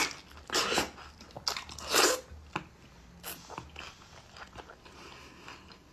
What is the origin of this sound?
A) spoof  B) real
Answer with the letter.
B